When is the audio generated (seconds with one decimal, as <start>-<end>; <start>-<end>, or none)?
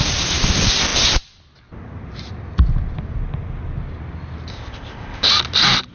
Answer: 4.5-5.3